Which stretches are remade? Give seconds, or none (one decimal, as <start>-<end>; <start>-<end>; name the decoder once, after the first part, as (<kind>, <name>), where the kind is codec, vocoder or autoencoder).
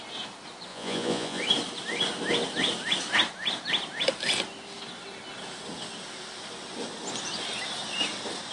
0.7-1.4 (vocoder, Vocos)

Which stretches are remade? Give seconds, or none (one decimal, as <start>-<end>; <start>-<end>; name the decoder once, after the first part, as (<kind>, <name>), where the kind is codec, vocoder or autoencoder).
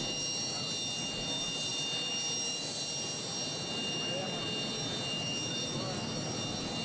none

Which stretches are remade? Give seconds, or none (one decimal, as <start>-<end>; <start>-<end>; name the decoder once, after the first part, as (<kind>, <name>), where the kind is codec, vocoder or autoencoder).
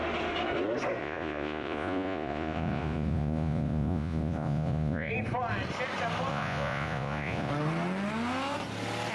1.0-5.1 (vocoder, Vocos); 6.3-7.5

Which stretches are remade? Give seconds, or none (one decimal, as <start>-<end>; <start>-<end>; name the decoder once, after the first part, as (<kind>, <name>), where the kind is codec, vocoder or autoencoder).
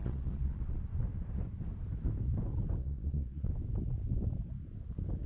0.0-0.8 (vocoder, Vocos); 2.8-3.5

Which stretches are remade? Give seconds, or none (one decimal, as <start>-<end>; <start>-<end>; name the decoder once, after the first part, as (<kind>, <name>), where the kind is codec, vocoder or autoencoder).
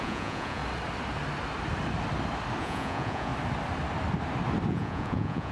0.0-0.6 (vocoder, Vocos); 2.6-3.3; 4.7-5.5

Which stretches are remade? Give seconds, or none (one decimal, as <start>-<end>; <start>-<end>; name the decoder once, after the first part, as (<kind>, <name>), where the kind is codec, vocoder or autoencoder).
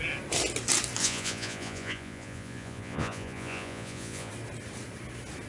1.0-4.3 (vocoder, Vocos)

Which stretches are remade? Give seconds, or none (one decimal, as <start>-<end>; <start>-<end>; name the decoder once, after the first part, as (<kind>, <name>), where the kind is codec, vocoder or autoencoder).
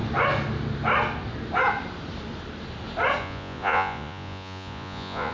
3.2-5.3 (vocoder, Vocos)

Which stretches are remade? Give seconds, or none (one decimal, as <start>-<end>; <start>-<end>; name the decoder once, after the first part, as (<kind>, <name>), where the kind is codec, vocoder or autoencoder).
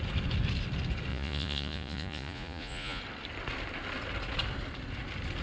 1.1-3.0 (vocoder, Vocos)